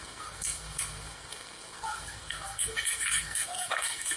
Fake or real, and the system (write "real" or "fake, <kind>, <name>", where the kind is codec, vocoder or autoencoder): fake, codec, SNAC